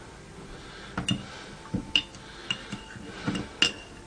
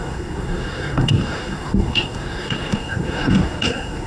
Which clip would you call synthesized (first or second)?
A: second